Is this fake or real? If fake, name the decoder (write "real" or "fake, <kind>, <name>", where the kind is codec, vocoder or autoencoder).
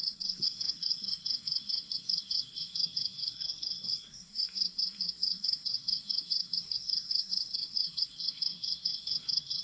fake, codec, SNAC